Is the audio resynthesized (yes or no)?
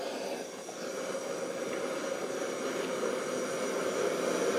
no